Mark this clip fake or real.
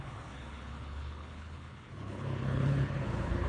fake